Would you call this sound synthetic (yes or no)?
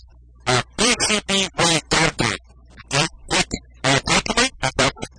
yes